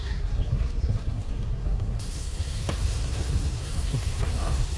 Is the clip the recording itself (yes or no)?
no